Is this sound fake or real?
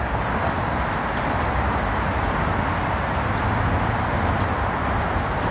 real